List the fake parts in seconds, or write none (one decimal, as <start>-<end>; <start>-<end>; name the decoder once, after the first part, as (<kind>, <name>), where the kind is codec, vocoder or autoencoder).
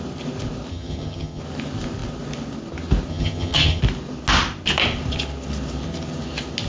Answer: 0.7-1.4 (vocoder, HiFi-GAN); 3.1-3.8